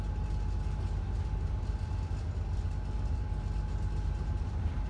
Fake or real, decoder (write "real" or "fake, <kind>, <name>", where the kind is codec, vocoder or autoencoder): real